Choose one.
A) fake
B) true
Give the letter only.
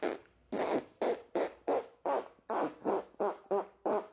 B